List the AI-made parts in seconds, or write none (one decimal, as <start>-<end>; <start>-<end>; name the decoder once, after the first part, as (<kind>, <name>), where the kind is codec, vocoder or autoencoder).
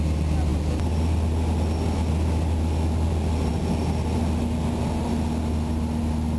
none